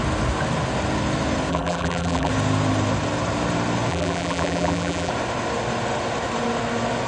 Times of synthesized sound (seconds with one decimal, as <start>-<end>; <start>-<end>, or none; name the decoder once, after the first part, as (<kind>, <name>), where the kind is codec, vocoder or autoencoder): 1.5-2.3 (vocoder, BigVGAN v2); 3.9-5.1